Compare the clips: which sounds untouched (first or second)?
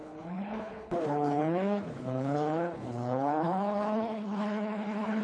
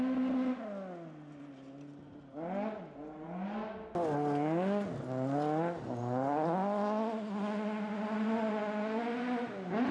second